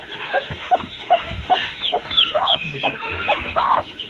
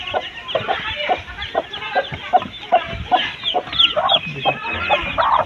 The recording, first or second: second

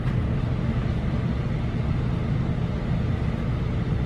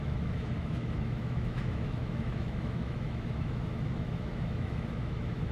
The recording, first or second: first